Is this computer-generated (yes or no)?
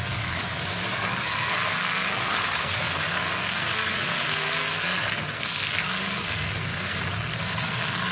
yes